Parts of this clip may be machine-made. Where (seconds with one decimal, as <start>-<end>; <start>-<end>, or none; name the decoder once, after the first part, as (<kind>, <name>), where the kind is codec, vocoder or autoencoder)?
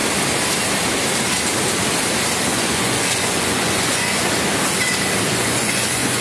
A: 2.5-4.2 (vocoder, Vocos); 5.3-6.2